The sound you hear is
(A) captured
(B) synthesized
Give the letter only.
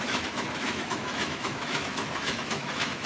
B